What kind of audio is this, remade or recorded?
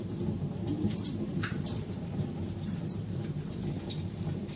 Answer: remade